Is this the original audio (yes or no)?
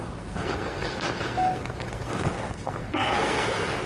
no